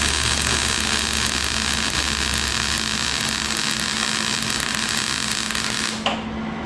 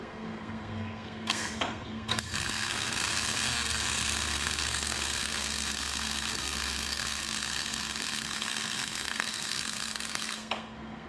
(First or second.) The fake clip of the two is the second